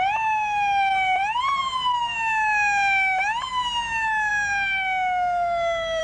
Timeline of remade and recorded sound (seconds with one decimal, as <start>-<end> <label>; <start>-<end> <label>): 0.0-6.0 recorded